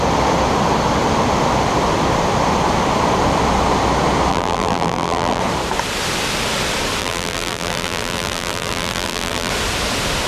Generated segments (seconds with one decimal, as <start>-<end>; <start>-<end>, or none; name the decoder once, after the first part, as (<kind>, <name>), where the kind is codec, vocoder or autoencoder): 4.3-5.4 (vocoder, BigVGAN v2); 7.0-9.5